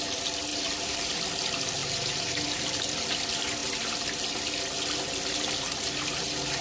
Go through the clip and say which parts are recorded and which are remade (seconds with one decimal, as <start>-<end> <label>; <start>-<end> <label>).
0.0-0.5 recorded; 0.5-1.2 remade; 1.2-1.8 recorded; 1.8-2.8 remade; 2.8-6.6 recorded